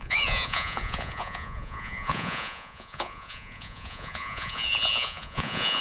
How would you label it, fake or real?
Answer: fake